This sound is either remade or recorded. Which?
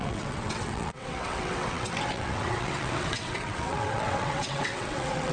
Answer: remade